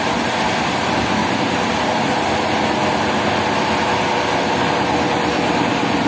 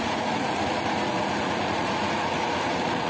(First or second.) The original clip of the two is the first